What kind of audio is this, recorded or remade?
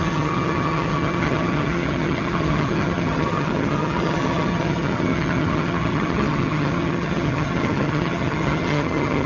remade